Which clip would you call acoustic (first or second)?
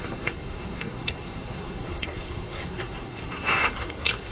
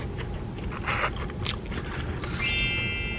second